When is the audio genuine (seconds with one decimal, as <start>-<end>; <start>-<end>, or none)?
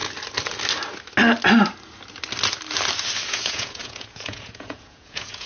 0.0-3.3